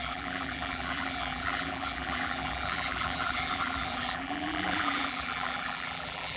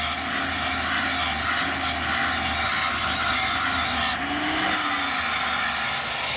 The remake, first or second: first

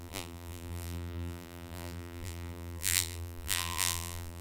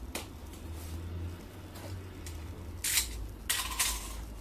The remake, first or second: first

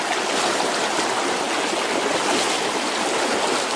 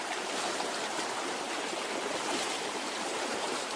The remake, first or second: second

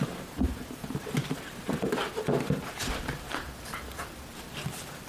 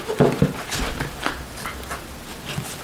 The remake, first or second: first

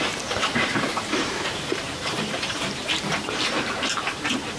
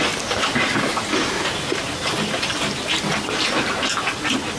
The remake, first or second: first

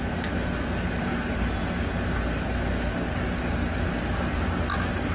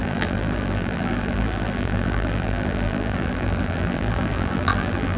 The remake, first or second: second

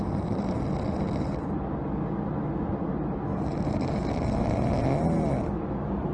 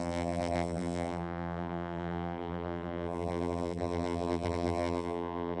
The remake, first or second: second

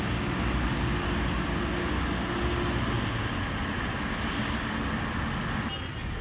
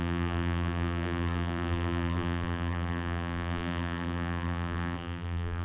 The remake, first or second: second